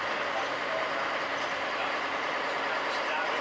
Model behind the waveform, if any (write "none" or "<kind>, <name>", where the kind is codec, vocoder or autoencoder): none